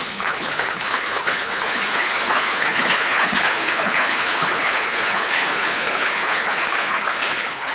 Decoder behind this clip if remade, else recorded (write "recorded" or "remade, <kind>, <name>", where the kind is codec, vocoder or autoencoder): remade, codec, HILCodec